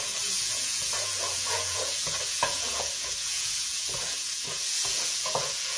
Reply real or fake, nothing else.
fake